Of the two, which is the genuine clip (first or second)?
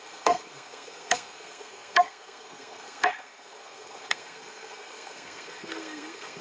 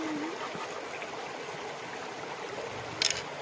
second